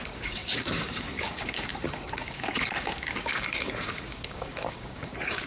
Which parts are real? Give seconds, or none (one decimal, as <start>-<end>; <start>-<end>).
none